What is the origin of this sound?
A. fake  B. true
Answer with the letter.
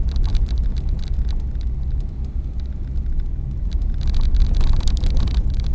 B